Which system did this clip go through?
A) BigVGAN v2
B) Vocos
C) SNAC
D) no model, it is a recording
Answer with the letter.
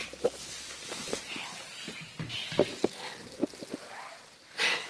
D